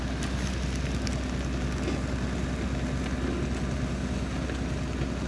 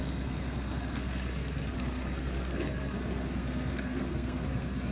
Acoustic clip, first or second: first